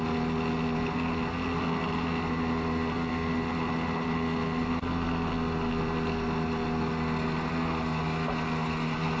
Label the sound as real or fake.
real